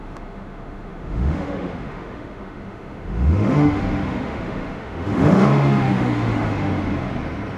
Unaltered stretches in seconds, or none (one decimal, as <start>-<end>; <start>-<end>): 6.7-7.6